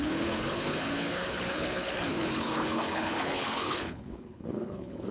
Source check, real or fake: fake